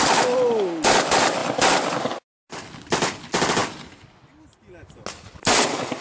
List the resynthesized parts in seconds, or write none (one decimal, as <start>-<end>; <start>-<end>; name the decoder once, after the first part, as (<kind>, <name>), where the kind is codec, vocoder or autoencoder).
none